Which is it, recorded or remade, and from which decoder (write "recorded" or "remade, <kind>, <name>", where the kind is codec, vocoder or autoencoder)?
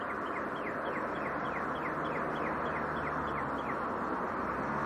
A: recorded